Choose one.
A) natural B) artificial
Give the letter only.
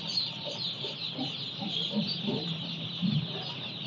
B